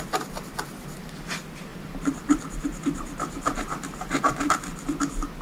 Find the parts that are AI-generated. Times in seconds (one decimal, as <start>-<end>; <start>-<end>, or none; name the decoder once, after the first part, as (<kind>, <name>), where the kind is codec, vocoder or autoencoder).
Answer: 1.7-4.5 (vocoder, BigVGAN v2)